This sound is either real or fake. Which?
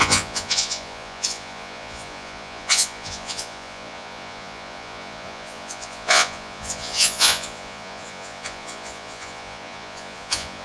fake